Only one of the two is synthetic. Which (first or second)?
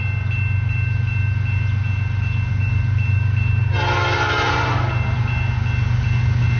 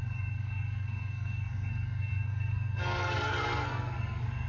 second